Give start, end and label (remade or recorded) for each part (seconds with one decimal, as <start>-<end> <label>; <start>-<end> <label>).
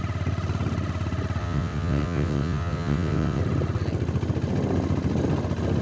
0.0-1.4 recorded; 1.4-3.4 remade; 3.4-5.8 recorded